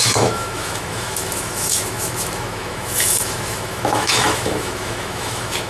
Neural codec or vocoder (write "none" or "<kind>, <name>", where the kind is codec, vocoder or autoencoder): autoencoder, DAC-VAE